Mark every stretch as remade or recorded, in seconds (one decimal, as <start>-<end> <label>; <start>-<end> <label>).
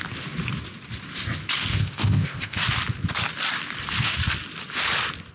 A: 0.0-1.7 recorded; 1.7-2.6 remade; 2.6-5.3 recorded